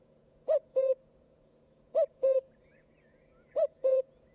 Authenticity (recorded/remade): remade